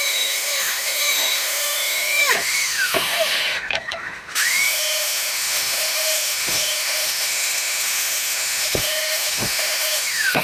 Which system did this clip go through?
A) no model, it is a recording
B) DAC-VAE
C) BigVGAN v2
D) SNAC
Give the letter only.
B